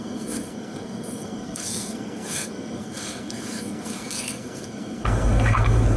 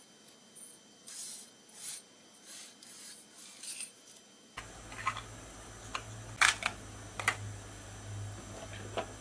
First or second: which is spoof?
first